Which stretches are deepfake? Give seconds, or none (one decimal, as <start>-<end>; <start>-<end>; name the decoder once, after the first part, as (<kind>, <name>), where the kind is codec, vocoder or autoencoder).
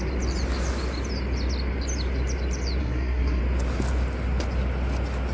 2.8-3.4 (codec, SNAC)